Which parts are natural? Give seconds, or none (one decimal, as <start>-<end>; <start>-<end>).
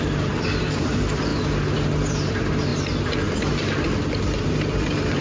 1.3-2.3; 2.7-4.2